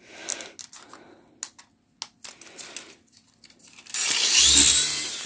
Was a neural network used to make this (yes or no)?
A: no